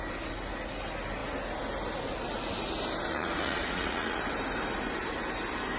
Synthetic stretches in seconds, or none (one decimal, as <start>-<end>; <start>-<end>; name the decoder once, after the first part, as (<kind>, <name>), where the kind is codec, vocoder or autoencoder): 3.1-4.2 (vocoder, Vocos)